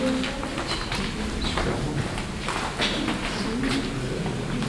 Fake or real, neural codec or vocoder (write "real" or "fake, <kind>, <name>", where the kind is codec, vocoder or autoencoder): real